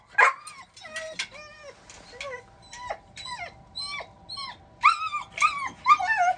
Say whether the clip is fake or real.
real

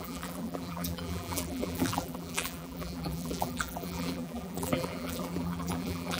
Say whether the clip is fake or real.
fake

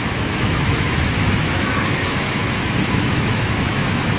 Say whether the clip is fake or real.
fake